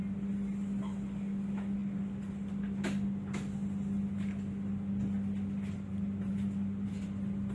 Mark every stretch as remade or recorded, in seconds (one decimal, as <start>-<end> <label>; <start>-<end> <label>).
0.0-7.5 recorded